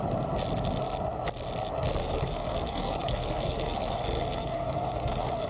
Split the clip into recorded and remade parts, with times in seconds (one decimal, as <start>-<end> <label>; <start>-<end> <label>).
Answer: 0.0-2.0 recorded; 2.0-5.5 remade